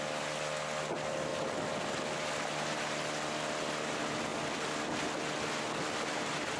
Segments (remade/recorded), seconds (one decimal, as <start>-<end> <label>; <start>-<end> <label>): 0.0-6.6 recorded